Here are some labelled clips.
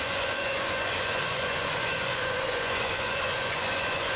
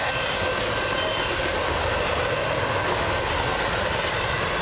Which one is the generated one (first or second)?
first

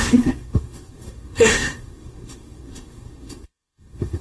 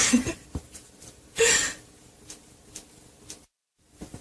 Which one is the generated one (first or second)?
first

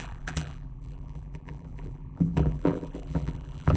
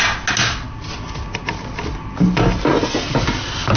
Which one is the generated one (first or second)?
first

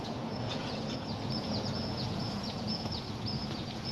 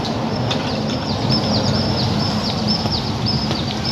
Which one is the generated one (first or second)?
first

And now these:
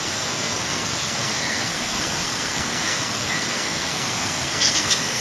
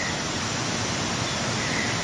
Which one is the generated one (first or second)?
first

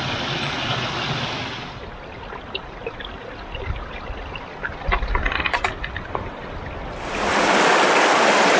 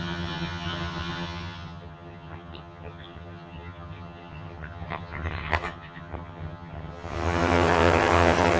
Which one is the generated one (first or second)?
second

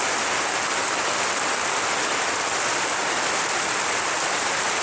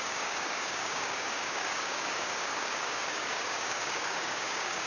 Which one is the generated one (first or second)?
second